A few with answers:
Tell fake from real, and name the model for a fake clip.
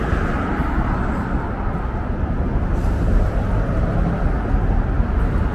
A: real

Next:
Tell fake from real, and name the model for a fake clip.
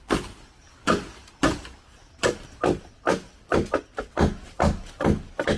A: real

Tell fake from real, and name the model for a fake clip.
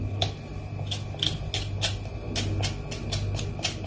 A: real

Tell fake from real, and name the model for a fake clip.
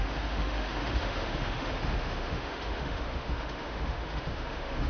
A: fake, autoencoder, DAC-VAE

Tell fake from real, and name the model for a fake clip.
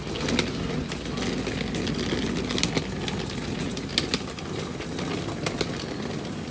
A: real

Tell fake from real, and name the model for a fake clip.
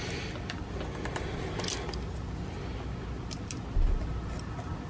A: real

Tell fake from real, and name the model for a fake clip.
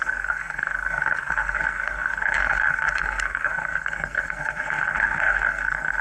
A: fake, codec, SNAC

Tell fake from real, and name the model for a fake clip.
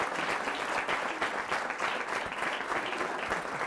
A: real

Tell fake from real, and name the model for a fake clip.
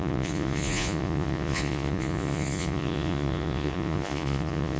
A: fake, vocoder, Vocos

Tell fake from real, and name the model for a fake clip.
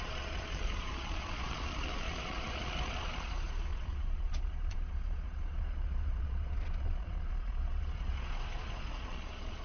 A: fake, vocoder, Vocos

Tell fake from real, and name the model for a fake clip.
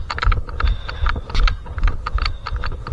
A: real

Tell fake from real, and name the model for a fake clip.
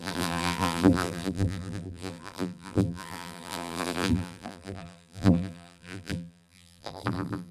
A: fake, vocoder, BigVGAN v2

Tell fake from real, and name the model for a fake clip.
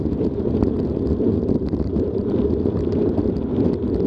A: fake, vocoder, BigVGAN v2